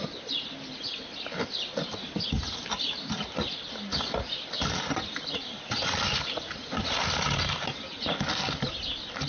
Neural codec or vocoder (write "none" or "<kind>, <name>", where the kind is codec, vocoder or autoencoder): none